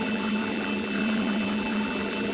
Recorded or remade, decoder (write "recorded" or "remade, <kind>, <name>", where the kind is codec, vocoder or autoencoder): remade, vocoder, BigVGAN v2